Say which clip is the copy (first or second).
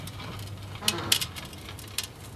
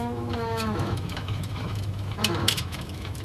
second